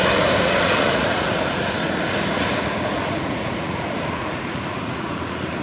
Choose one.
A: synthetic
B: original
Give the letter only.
A